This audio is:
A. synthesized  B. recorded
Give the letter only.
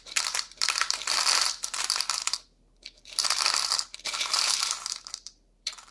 A